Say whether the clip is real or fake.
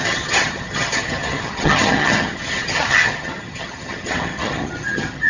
fake